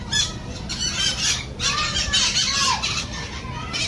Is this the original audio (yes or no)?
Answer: yes